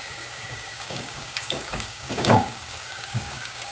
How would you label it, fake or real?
fake